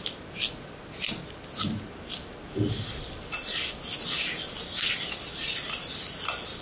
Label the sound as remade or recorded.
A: recorded